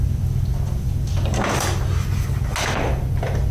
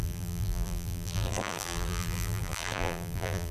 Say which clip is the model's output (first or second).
second